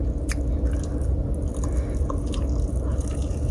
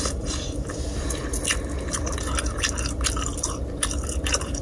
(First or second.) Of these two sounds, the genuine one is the first